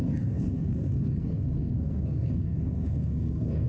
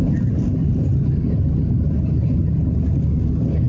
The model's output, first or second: first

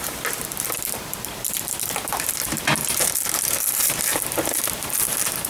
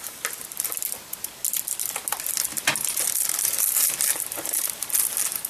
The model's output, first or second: first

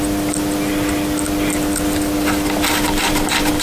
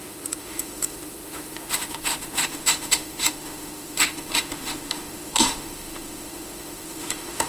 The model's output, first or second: second